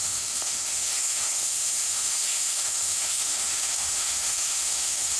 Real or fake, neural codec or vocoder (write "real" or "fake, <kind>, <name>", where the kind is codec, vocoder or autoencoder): fake, autoencoder, DAC-VAE